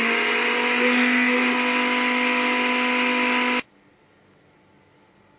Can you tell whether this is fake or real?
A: real